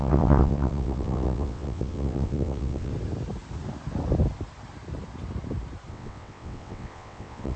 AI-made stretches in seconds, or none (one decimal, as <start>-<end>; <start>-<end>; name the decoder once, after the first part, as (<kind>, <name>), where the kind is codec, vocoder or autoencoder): 0.0-2.9 (vocoder, WaveNeXt); 5.9-7.6